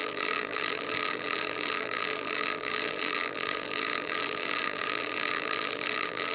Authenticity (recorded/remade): remade